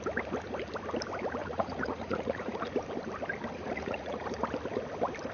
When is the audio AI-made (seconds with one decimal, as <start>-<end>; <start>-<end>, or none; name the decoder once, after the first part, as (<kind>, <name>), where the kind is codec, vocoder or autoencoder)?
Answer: 1.4-2.7 (vocoder, Vocos); 3.5-4.2